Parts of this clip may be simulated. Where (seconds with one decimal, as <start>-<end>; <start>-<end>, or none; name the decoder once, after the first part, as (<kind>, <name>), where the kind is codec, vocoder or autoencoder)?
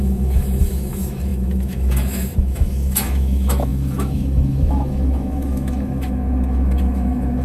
0.0-7.4 (autoencoder, DAC-VAE)